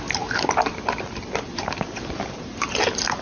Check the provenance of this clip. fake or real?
real